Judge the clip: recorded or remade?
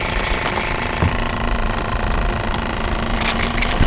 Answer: recorded